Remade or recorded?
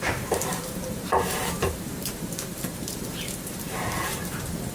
remade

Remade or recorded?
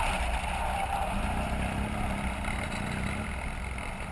recorded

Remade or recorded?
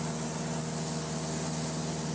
recorded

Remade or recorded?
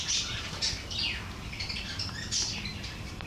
remade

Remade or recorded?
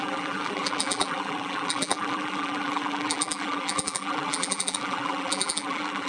remade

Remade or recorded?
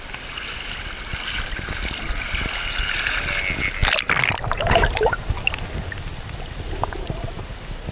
recorded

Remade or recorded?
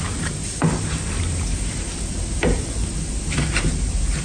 recorded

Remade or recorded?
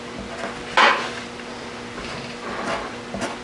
recorded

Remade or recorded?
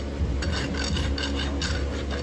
recorded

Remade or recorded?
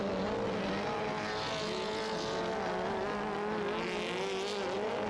recorded